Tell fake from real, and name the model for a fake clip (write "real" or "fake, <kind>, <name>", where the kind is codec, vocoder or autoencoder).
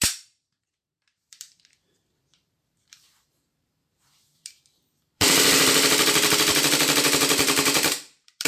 fake, vocoder, BigVGAN v2